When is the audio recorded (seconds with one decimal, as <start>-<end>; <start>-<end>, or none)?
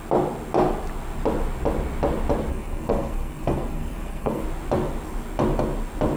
0.0-2.5; 4.4-6.2